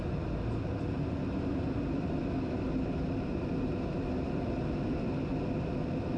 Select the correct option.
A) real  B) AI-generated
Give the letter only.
A